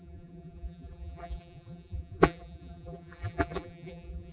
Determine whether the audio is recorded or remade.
remade